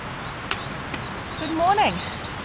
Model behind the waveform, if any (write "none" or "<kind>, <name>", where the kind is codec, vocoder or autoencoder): none